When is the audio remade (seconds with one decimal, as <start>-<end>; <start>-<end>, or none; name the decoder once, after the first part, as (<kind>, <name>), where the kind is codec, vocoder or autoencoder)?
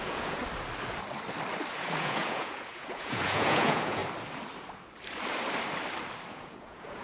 0.0-0.4 (vocoder, Vocos); 1.7-4.0; 6.3-7.0